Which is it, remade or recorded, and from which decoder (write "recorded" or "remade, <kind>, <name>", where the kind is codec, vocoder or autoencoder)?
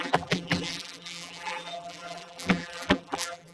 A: remade, vocoder, BigVGAN v2